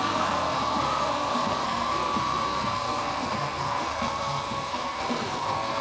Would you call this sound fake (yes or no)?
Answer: yes